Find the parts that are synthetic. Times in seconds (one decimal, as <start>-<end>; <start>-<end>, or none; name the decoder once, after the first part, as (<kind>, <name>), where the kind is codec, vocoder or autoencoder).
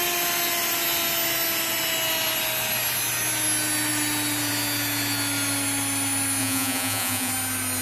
6.4-7.3 (vocoder, Vocos)